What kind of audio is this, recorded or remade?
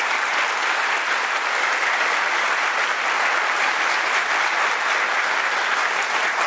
recorded